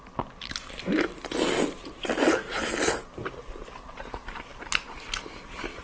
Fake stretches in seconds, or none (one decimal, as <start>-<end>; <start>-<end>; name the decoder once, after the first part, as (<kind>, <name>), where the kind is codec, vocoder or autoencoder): none